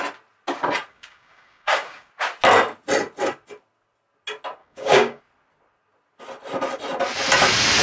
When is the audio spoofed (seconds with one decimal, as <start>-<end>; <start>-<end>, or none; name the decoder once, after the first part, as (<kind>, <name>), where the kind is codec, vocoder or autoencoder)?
0.9-2.1 (codec, DAC); 4.6-5.2